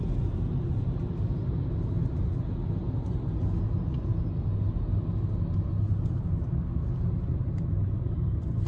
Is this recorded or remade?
recorded